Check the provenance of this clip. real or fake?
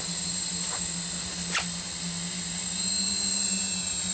real